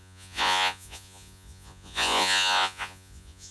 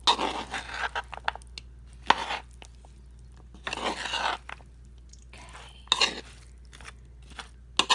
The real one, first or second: second